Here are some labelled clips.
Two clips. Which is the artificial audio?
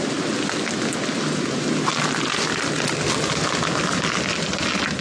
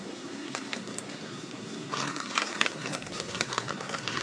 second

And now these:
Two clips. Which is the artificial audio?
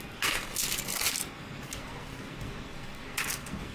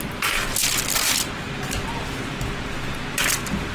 first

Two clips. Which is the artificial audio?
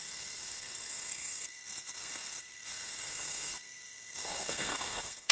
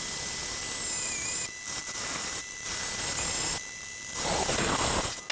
first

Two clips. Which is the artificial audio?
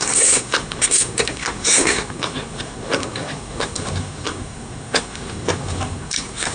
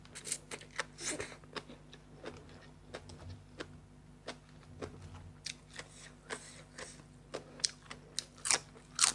first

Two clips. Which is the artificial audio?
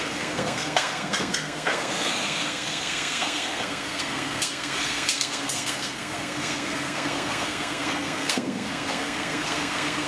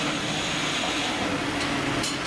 first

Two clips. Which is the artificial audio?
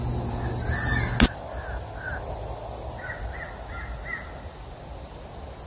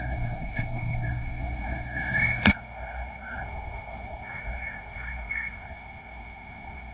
second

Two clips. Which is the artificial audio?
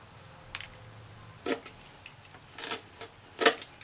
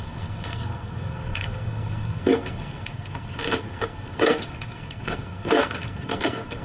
second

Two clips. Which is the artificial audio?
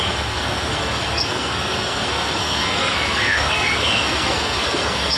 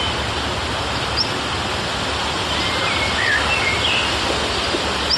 first